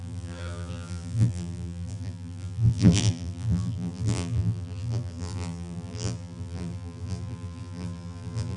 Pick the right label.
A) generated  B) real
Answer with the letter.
A